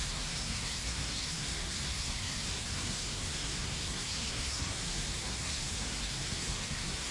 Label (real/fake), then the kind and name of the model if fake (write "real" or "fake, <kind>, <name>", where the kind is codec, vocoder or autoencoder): fake, codec, SNAC